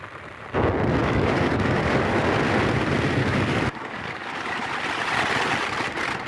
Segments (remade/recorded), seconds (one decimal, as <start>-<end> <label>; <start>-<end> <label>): 0.0-1.0 recorded; 1.0-2.2 remade; 2.2-3.2 recorded; 3.2-4.7 remade; 4.7-6.3 recorded